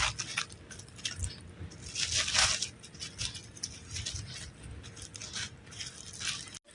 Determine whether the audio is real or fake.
real